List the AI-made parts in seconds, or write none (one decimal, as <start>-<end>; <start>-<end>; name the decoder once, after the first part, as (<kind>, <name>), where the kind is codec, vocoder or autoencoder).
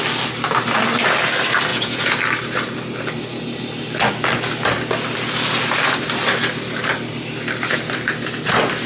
1.7-2.2 (vocoder, Vocos)